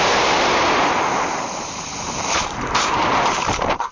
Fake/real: fake